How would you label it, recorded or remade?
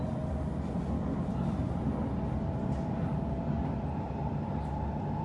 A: recorded